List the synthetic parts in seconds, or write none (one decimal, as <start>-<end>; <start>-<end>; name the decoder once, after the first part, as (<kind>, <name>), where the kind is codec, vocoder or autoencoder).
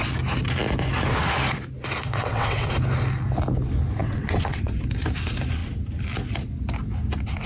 2.2-2.7 (vocoder, WaveNeXt); 4.0-4.7